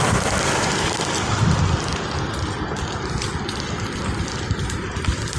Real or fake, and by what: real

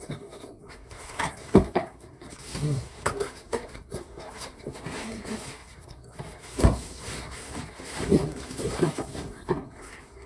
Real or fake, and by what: fake, codec, SNAC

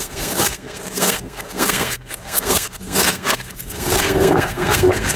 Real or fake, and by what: fake, codec, SNAC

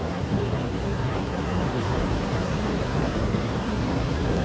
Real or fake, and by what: fake, codec, SNAC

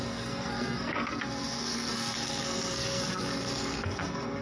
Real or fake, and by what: fake, codec, SNAC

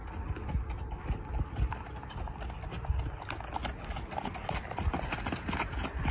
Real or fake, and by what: real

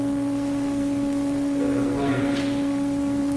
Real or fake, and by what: fake, codec, SNAC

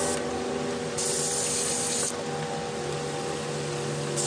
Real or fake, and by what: real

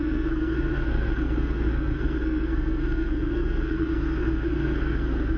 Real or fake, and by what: fake, codec, SNAC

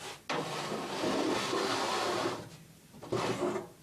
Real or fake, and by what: real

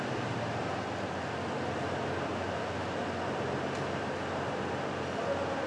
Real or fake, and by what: real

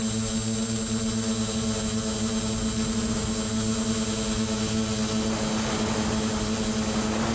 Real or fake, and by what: real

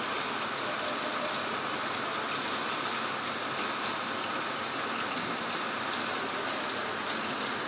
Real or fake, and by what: real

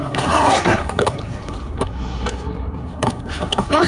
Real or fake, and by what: fake, codec, SNAC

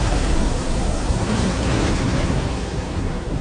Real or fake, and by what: fake, codec, SNAC